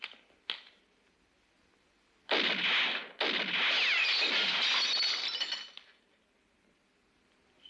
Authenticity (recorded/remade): recorded